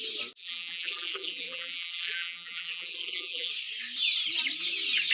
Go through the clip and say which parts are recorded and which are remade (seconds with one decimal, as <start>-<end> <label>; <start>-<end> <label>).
0.0-0.4 recorded; 0.4-3.5 remade; 3.5-5.1 recorded